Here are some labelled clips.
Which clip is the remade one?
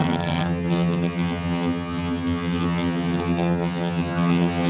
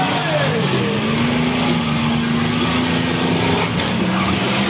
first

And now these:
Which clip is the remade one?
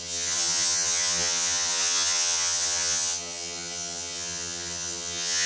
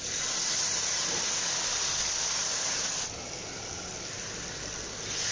first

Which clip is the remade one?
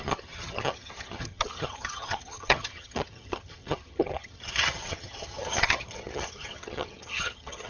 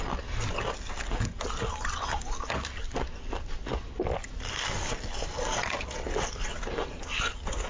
first